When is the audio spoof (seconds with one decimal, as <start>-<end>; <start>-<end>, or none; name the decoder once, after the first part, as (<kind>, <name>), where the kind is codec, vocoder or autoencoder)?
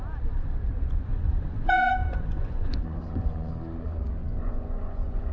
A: 1.1-3.5 (vocoder, Vocos); 4.2-5.3